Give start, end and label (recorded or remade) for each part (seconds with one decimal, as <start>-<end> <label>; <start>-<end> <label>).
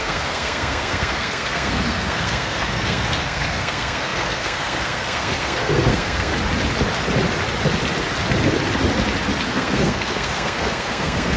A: 0.0-6.3 remade; 6.3-9.5 recorded; 9.5-11.4 remade